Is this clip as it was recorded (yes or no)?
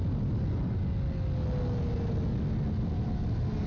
yes